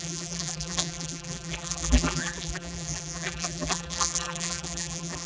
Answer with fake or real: fake